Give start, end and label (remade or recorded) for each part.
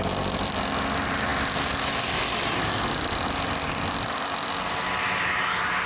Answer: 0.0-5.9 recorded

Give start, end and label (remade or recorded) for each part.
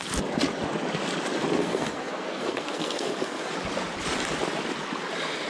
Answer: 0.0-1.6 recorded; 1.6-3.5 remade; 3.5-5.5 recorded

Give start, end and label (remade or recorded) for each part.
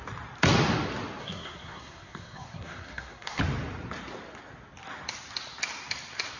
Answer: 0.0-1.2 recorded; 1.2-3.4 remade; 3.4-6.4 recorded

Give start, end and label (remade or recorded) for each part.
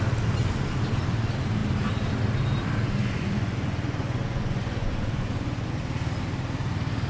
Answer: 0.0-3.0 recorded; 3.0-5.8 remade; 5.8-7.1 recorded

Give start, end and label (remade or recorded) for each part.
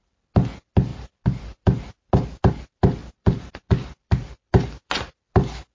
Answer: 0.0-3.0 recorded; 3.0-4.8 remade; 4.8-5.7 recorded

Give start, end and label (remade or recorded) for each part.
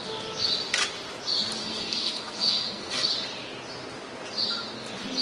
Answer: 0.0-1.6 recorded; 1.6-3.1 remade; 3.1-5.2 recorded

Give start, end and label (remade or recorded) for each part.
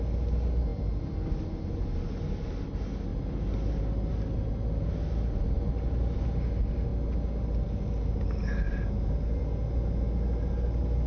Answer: 0.0-11.1 recorded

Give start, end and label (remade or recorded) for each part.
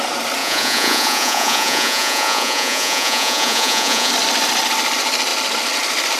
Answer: 0.0-0.4 recorded; 0.4-4.1 remade; 4.1-6.2 recorded